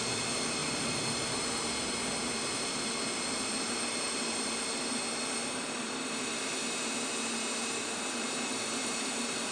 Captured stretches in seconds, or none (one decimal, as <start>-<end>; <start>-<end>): 6.6-7.8